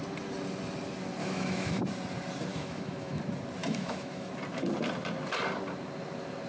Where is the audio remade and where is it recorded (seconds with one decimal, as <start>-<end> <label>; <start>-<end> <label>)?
0.0-1.2 recorded; 1.2-1.8 remade; 1.8-2.5 recorded; 2.5-3.2 remade; 3.2-3.6 recorded; 3.6-4.3 remade; 4.3-6.5 recorded